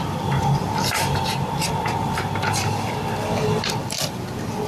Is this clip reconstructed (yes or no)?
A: yes